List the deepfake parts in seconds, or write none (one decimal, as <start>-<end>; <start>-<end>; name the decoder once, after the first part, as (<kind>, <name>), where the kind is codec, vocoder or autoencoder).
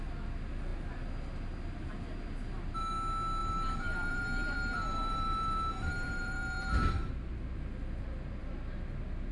3.4-7.1 (vocoder, BigVGAN v2)